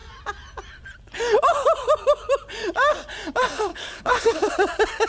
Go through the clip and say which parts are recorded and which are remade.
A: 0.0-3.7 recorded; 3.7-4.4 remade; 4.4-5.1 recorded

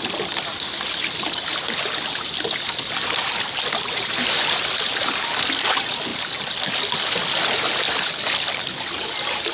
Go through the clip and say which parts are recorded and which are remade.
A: 0.0-9.5 recorded

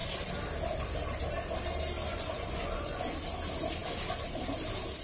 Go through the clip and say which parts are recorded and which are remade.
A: 0.0-2.1 recorded; 2.1-3.0 remade; 3.0-5.0 recorded

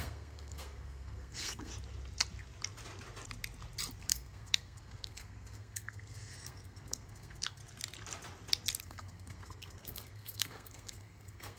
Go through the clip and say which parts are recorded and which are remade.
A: 0.0-1.7 remade; 1.7-4.0 recorded; 4.0-7.6 remade; 7.6-8.8 recorded; 8.8-11.6 remade

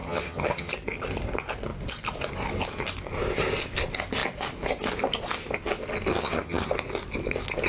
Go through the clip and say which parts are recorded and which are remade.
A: 0.0-0.7 remade; 0.7-6.1 recorded; 6.1-6.7 remade; 6.7-7.7 recorded